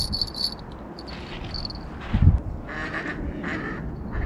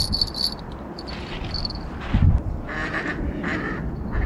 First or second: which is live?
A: first